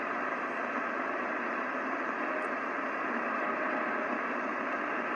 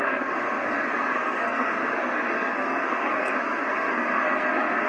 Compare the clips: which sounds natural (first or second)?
first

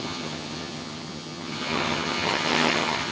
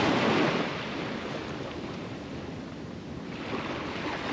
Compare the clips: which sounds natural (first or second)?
second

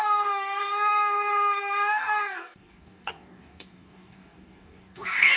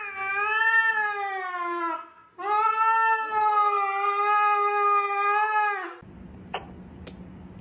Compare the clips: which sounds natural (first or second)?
second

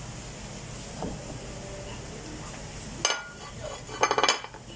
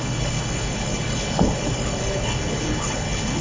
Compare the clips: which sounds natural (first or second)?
first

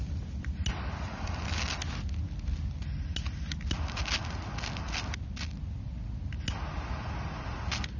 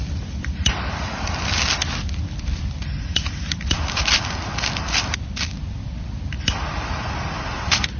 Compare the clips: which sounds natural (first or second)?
first